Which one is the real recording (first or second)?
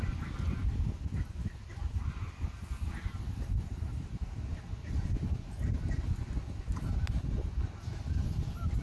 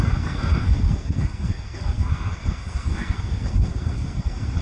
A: first